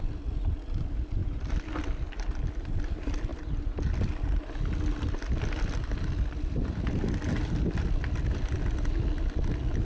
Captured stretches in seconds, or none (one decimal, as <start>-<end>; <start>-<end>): 0.0-9.8